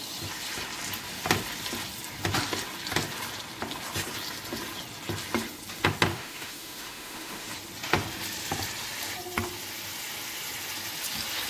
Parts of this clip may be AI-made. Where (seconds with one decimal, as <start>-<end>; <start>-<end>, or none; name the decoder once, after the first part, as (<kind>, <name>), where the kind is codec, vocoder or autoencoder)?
6.1-7.5 (autoencoder, DAC-VAE)